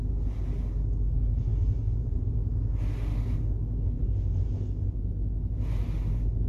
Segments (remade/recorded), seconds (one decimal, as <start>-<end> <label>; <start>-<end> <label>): 0.0-1.5 recorded; 1.5-2.2 remade; 2.2-6.5 recorded